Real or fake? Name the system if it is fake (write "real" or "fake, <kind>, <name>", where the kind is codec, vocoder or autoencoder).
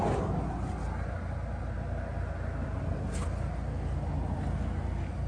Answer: real